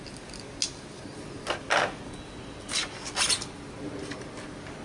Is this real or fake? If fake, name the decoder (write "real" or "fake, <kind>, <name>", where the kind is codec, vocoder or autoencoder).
real